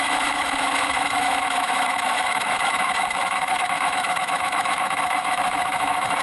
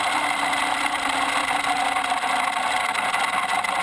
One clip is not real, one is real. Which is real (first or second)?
second